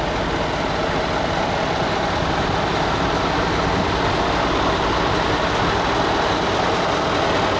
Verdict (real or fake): real